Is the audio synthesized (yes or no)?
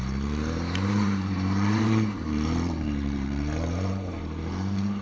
yes